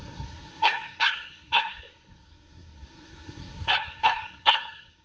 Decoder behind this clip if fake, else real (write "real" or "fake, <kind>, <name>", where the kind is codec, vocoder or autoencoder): fake, codec, SNAC